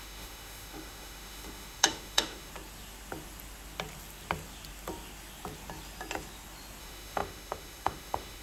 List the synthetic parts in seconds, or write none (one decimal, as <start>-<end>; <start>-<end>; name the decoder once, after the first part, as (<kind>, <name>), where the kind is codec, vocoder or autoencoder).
0.0-2.5 (autoencoder, DAC-VAE); 6.8-8.4